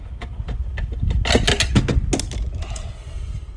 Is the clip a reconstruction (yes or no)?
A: no